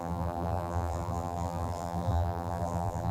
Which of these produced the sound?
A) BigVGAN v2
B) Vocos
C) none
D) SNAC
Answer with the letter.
A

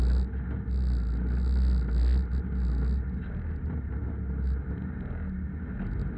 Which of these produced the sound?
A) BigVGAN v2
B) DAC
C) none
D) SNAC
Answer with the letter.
C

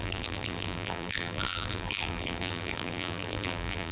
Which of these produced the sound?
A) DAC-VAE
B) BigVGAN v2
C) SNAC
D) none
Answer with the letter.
B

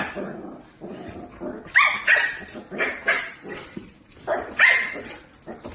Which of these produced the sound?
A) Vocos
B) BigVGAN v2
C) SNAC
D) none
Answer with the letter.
D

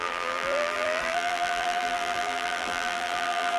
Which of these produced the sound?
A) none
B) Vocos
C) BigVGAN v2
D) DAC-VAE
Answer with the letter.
C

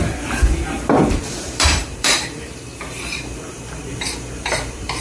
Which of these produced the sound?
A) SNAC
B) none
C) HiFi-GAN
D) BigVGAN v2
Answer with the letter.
D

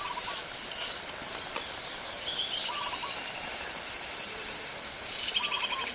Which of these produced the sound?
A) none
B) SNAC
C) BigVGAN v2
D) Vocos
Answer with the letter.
C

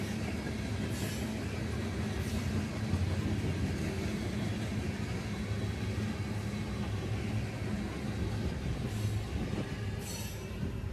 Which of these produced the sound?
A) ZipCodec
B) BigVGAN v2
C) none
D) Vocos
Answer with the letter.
C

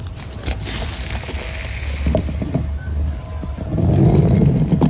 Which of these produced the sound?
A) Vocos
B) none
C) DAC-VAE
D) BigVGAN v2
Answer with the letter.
B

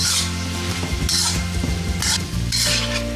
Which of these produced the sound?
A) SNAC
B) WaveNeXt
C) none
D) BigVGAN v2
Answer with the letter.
D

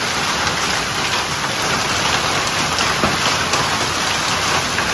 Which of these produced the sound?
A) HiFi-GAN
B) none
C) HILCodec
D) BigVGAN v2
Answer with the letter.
B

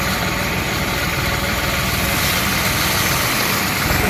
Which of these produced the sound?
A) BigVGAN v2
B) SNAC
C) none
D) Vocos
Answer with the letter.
A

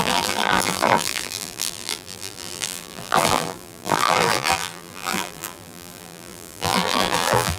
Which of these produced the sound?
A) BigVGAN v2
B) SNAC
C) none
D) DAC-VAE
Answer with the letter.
A